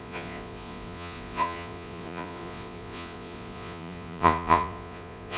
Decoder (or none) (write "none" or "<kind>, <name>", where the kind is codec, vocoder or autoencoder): vocoder, Vocos